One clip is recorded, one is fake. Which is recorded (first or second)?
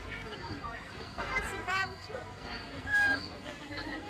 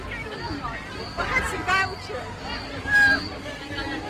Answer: second